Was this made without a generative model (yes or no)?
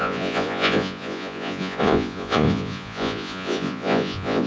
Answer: no